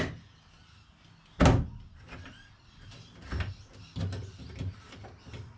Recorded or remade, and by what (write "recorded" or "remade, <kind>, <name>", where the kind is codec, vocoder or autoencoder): recorded